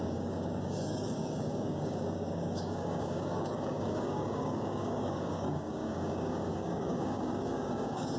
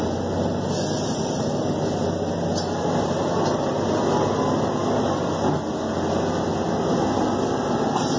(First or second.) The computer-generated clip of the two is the first